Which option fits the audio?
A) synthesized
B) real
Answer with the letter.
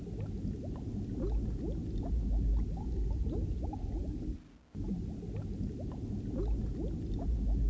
B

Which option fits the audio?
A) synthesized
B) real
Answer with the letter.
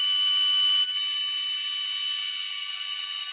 B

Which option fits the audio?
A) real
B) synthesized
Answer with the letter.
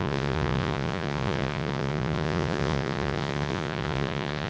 B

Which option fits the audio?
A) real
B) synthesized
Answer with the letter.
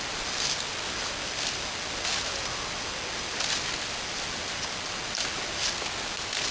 A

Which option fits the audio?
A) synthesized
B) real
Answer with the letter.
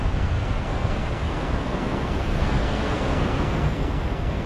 A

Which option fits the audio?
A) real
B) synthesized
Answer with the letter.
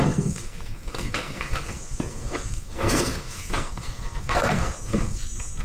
B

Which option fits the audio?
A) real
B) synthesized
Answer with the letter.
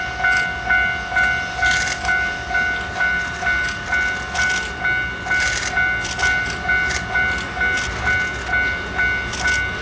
A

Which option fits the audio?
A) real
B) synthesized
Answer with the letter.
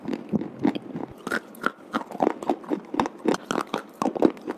A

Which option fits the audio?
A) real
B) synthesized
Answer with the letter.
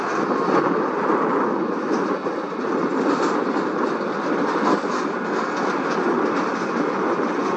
A